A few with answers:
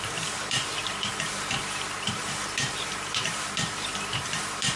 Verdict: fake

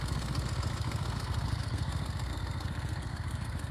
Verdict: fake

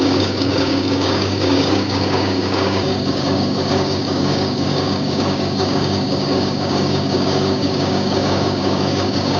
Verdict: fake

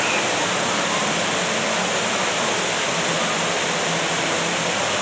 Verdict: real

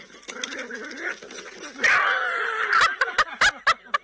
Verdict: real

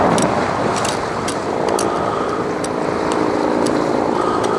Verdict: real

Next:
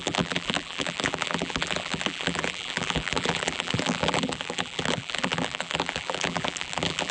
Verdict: fake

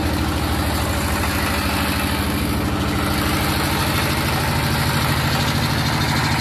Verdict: real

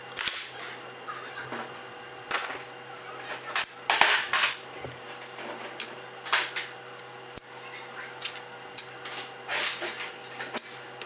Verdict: real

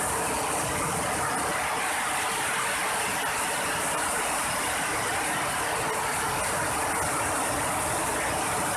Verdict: real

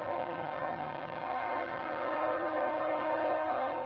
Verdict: fake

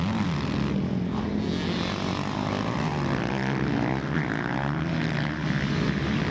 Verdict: real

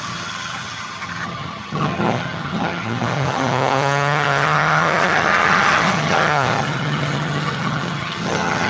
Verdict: fake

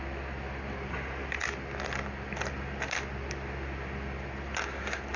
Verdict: real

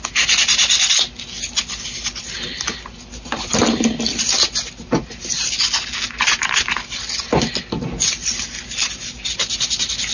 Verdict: real